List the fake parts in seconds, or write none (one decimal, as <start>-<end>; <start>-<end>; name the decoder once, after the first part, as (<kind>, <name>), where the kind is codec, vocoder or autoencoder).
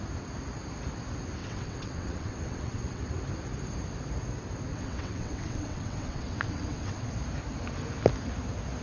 1.4-3.2 (vocoder, WaveNeXt); 4.7-7.1